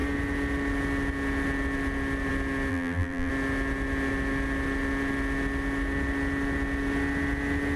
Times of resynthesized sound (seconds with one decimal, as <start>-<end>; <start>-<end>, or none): 2.7-3.3